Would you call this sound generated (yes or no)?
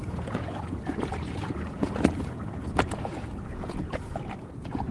yes